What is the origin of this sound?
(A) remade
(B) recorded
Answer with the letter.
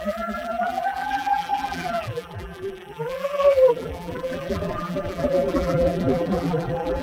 A